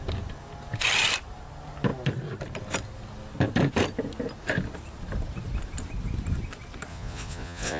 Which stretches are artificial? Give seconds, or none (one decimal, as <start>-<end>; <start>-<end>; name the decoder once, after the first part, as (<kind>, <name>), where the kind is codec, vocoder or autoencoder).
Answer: 6.9-7.8 (vocoder, Vocos)